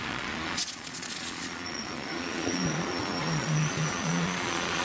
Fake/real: fake